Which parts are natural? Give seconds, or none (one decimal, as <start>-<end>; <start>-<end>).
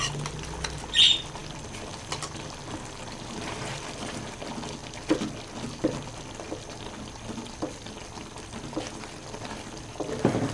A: 0.0-10.5